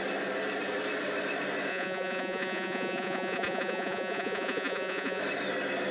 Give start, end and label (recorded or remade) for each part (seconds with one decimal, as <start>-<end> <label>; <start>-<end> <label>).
0.0-1.7 recorded; 1.7-5.2 remade; 5.2-5.9 recorded

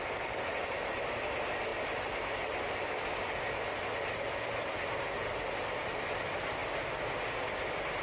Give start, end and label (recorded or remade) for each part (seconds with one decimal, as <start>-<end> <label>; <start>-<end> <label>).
0.0-8.0 recorded